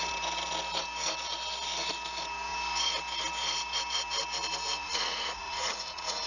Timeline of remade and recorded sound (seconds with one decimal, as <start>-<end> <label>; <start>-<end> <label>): 0.0-4.8 recorded; 4.8-6.3 remade

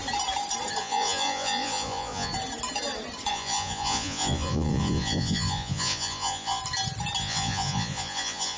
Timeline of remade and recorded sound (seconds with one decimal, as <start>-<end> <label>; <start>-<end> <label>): 0.0-0.8 recorded; 0.8-2.3 remade; 2.3-3.3 recorded; 3.3-6.6 remade; 6.6-7.2 recorded; 7.2-8.6 remade

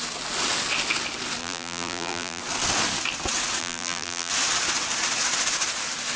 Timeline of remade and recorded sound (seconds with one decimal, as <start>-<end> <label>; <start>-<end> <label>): 0.0-1.4 recorded; 1.4-2.4 remade; 2.4-3.6 recorded; 3.6-4.3 remade; 4.3-6.2 recorded

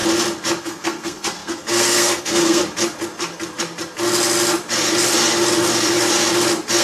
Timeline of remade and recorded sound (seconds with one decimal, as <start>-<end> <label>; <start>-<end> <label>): 0.0-0.6 recorded; 0.6-2.6 remade; 2.6-6.8 recorded

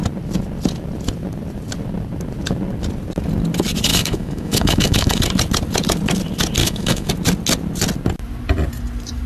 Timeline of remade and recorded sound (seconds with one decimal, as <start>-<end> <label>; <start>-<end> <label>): 0.0-3.9 recorded; 3.9-5.2 remade; 5.2-6.6 recorded; 6.6-7.1 remade; 7.1-9.3 recorded

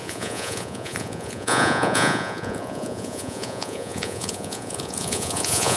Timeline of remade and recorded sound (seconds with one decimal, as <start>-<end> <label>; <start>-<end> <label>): 0.0-5.8 remade

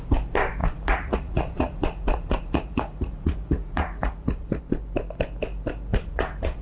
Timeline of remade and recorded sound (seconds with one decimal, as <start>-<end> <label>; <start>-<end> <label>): 0.0-0.6 recorded; 0.6-4.6 remade; 4.6-5.9 recorded; 5.9-6.6 remade